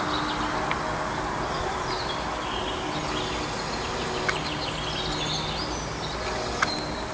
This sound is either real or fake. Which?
real